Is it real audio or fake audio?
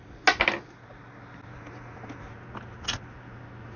real